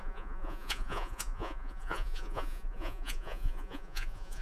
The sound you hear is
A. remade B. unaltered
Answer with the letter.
A